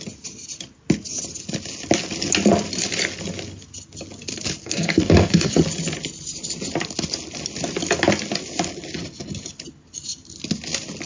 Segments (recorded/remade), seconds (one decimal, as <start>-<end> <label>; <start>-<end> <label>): 0.0-4.6 recorded; 4.6-5.5 remade; 5.5-11.1 recorded